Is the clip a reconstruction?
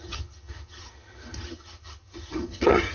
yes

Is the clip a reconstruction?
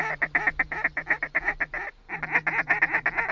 no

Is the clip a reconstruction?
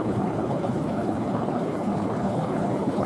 yes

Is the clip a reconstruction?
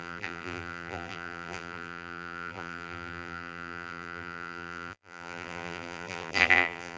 yes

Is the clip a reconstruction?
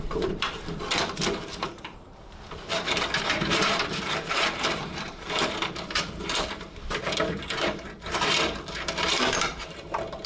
yes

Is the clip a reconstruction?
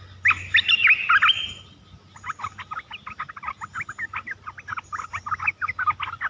no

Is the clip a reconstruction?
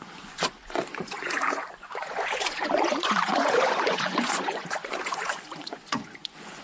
yes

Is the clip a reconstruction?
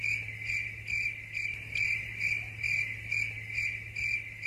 no